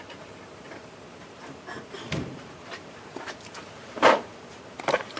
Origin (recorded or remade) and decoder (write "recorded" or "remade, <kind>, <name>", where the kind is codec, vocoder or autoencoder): remade, vocoder, BigVGAN v2